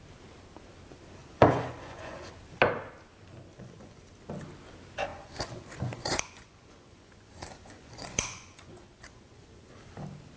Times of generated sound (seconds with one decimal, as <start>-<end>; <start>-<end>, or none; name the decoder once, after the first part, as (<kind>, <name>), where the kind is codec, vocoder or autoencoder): 1.2-2.3 (vocoder, Vocos); 3.5-4.0; 5.1-9.8